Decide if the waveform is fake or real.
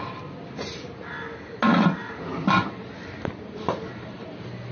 real